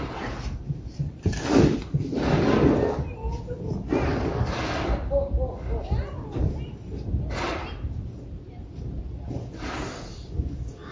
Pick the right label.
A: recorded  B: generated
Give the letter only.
A